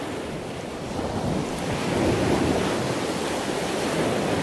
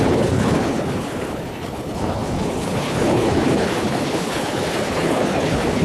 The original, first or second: first